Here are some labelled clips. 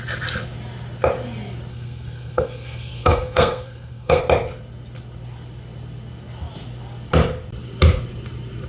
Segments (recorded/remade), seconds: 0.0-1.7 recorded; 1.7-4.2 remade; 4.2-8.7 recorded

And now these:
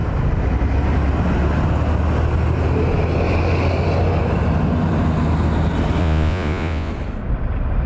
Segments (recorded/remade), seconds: 0.0-6.0 recorded; 6.0-6.9 remade; 6.9-7.9 recorded

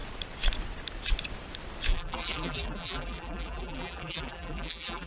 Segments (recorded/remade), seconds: 0.0-1.9 recorded; 1.9-5.1 remade

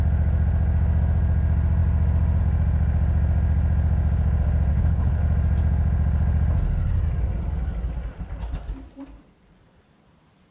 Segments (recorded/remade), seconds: 0.0-4.7 recorded; 4.7-5.2 remade; 5.2-10.5 recorded

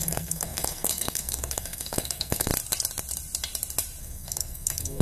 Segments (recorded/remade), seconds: 0.0-2.5 remade; 2.5-4.0 recorded; 4.0-5.0 remade

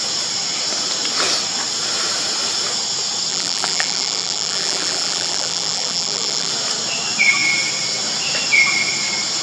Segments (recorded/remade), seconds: 0.0-3.3 recorded; 3.3-6.5 remade; 6.5-9.4 recorded

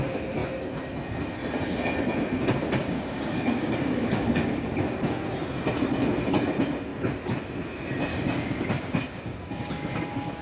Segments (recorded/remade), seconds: 0.0-2.8 recorded; 2.8-4.7 remade; 4.7-8.1 recorded; 8.1-10.4 remade